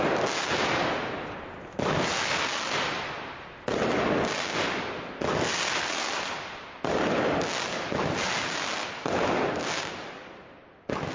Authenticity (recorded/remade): recorded